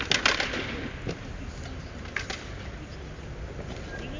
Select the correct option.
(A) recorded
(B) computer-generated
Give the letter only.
A